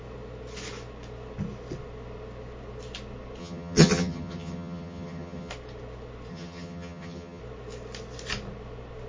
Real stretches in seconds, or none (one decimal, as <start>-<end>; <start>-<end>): 0.0-3.4; 5.5-6.3; 7.4-9.1